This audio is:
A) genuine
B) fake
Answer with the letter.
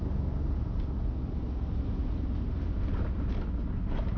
A